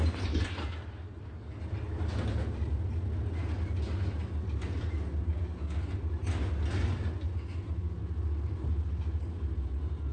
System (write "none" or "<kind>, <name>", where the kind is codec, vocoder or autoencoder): none